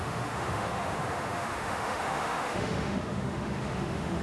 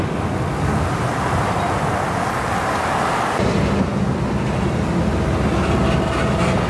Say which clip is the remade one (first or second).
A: first